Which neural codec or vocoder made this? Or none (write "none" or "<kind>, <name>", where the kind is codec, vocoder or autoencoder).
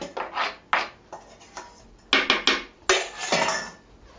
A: none